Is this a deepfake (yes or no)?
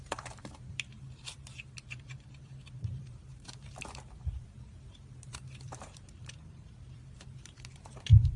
yes